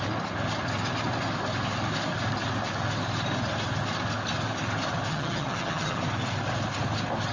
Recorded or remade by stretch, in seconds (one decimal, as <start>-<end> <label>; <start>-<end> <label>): 0.0-5.1 recorded; 5.1-6.0 remade; 6.0-7.3 recorded